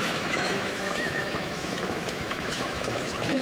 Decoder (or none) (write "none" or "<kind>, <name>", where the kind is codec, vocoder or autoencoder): autoencoder, DAC-VAE